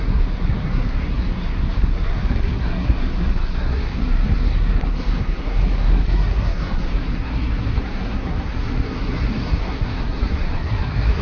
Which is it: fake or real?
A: fake